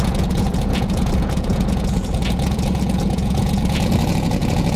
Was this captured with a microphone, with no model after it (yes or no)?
no